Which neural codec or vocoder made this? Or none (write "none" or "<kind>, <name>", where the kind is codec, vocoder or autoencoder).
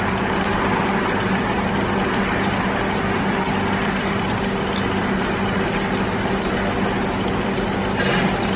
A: none